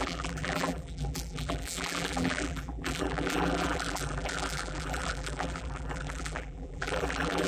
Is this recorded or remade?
remade